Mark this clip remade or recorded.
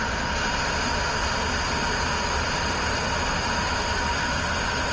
recorded